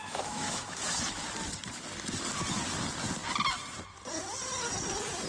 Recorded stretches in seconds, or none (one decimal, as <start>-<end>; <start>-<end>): 1.0-5.3